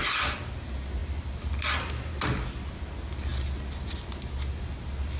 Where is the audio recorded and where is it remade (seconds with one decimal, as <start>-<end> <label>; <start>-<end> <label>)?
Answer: 0.0-1.0 recorded; 1.0-1.5 remade; 1.5-5.2 recorded